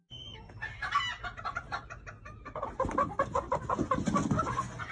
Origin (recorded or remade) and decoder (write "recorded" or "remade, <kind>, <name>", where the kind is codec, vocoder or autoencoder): recorded